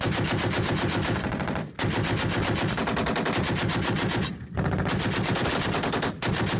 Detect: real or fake real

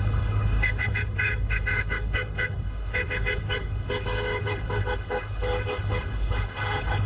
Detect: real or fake fake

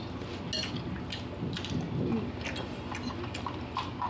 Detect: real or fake real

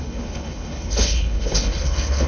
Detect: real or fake fake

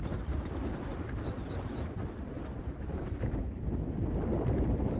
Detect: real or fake real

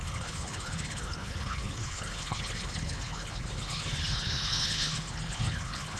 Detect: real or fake fake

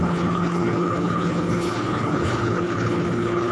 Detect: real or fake fake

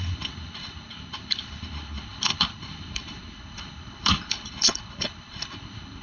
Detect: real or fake fake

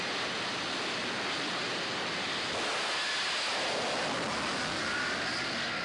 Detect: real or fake real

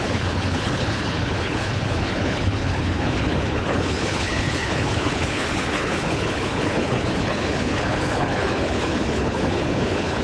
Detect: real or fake fake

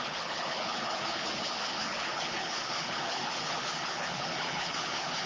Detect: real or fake fake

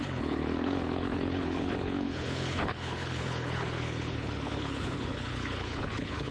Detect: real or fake fake